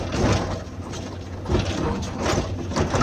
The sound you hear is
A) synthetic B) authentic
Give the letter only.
B